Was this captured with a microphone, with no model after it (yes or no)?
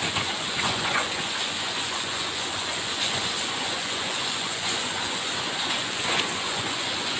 no